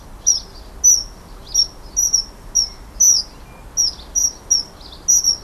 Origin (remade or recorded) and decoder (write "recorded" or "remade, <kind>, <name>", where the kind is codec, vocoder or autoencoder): recorded